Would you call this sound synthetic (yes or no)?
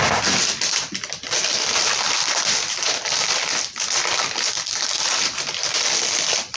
no